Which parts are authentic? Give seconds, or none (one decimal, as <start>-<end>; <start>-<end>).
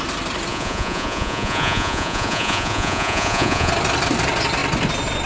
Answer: 0.0-0.5; 3.7-5.3